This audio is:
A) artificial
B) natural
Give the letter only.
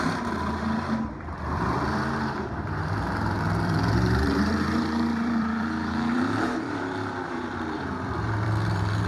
A